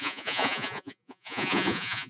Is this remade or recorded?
remade